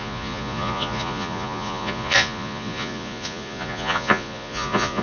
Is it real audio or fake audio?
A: fake